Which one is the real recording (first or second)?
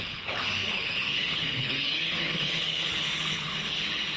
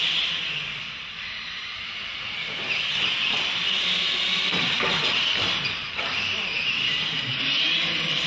second